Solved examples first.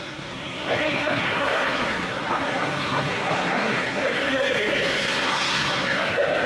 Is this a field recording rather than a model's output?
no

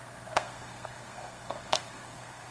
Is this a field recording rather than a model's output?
no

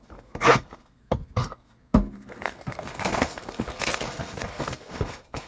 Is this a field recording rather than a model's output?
no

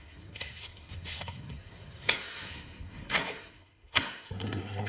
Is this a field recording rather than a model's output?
no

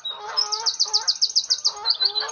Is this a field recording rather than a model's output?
yes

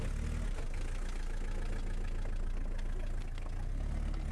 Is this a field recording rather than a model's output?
yes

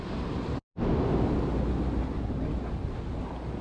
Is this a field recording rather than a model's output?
yes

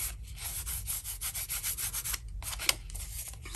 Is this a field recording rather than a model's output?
yes